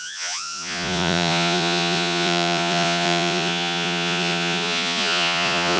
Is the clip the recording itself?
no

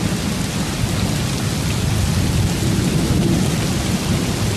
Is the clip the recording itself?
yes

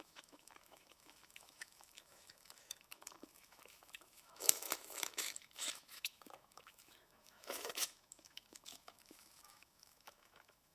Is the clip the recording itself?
no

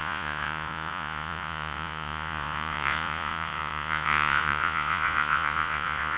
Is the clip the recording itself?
no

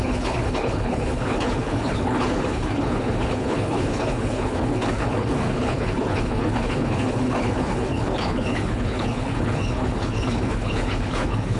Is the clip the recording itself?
no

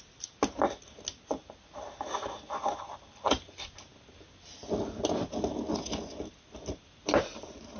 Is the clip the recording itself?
yes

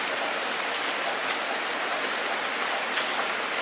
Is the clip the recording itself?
yes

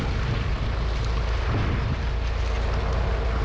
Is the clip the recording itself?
yes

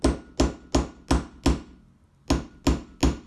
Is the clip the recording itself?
yes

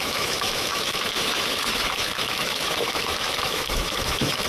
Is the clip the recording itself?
no